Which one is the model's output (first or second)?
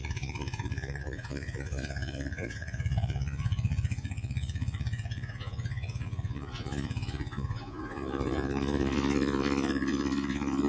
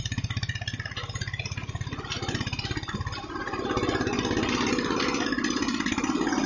first